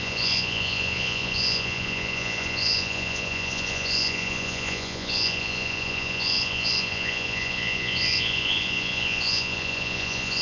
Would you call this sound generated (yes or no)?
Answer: yes